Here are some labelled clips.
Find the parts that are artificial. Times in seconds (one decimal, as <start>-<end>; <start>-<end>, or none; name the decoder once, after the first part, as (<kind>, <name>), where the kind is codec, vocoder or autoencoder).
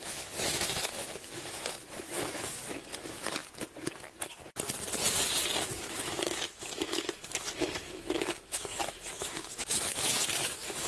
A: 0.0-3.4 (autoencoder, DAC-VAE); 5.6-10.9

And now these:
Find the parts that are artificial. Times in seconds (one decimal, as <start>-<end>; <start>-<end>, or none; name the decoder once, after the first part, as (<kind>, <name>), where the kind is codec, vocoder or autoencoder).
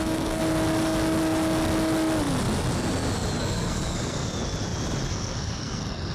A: 0.0-0.4 (codec, SNAC); 3.4-4.3; 5.1-6.1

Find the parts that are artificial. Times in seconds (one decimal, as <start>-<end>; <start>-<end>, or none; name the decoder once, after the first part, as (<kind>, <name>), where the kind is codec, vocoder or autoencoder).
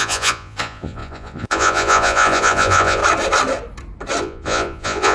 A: 0.0-3.0 (vocoder, Vocos); 4.2-5.1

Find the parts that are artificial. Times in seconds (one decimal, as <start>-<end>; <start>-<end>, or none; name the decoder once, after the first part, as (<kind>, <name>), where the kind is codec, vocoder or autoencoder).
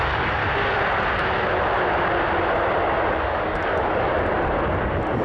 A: 0.0-0.4 (codec, DAC); 3.1-4.1; 4.8-5.2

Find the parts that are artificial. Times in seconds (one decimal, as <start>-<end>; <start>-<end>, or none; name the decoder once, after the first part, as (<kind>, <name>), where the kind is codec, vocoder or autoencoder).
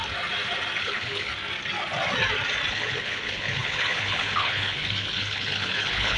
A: 0.8-1.3 (codec, HILCodec); 2.7-6.2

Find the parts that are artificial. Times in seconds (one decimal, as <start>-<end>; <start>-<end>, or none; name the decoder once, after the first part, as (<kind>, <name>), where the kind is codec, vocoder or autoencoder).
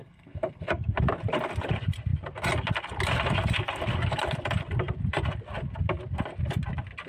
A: 0.0-0.9 (codec, SNAC)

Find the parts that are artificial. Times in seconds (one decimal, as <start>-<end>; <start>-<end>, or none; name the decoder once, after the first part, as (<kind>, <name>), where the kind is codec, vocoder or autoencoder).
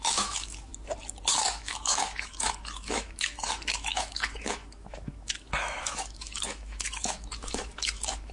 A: 0.0-0.7 (autoencoder, DAC-VAE); 1.3-8.3